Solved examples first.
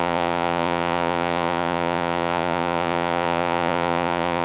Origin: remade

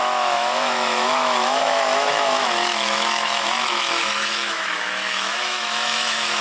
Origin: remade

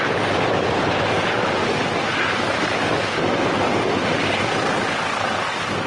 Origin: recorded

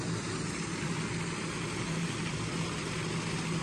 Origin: recorded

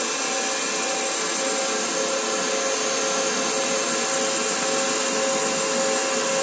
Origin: recorded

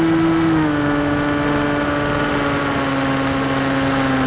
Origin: recorded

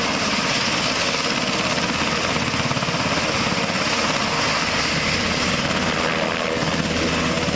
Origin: recorded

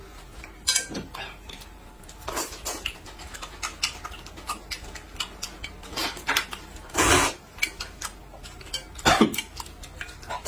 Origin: recorded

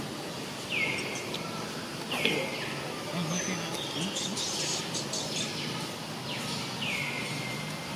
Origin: recorded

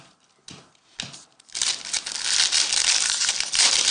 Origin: recorded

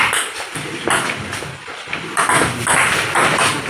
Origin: recorded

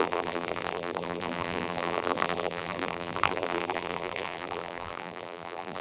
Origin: remade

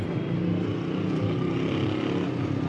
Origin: recorded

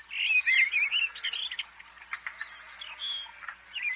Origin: recorded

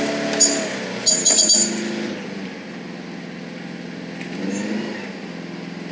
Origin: recorded